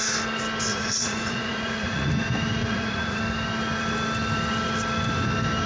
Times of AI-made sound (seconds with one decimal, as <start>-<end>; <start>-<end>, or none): 0.7-2.1; 2.6-3.2